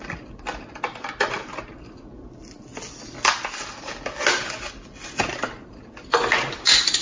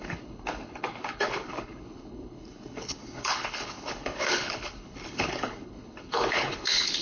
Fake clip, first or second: second